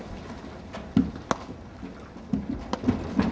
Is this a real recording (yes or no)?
yes